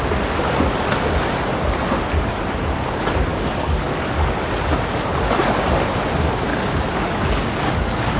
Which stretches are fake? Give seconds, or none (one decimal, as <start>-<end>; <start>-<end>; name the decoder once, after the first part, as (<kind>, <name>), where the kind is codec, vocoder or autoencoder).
3.3-4.5 (codec, DAC); 6.5-8.2

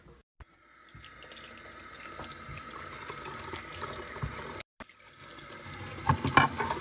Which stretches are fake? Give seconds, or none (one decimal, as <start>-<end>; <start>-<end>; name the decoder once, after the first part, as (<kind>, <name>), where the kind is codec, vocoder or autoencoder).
none

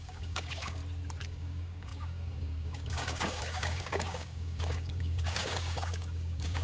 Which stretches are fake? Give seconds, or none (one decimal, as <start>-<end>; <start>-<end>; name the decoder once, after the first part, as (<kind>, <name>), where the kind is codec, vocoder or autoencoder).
0.0-0.8 (codec, DAC); 1.3-6.6

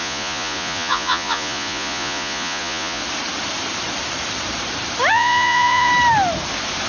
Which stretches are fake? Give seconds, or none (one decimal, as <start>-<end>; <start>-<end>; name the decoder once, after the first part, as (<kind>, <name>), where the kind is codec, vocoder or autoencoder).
0.0-3.0 (vocoder, Vocos); 5.1-5.9

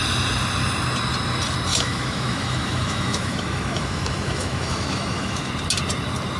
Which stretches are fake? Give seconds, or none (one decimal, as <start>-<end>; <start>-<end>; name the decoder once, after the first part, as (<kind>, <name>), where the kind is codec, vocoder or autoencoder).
1.7-5.5 (autoencoder, DAC-VAE)

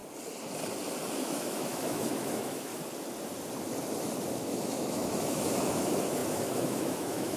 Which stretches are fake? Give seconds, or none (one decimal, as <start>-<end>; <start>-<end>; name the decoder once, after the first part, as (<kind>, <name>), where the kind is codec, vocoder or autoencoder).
1.1-2.7 (autoencoder, DAC-VAE); 4.4-7.4

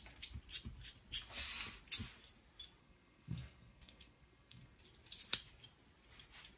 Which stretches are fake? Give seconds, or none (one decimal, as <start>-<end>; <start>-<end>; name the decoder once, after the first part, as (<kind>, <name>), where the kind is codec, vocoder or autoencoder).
2.8-4.8 (codec, SNAC)

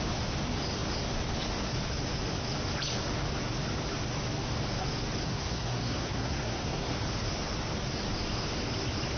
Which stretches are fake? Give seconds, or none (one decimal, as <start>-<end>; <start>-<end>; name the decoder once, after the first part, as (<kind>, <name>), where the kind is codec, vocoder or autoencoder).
5.2-6.9 (codec, SNAC)